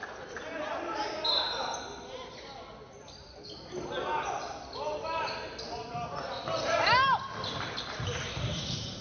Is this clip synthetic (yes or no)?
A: no